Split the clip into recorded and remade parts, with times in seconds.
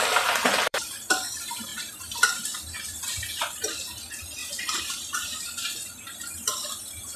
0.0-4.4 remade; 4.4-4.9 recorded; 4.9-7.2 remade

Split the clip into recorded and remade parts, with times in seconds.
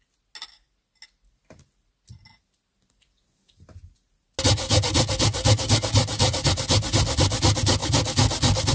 0.0-6.1 recorded; 6.1-7.0 remade; 7.0-8.7 recorded